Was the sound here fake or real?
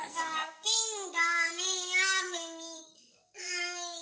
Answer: fake